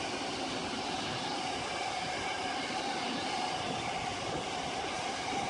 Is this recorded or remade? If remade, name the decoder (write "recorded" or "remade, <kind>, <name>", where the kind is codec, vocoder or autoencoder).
recorded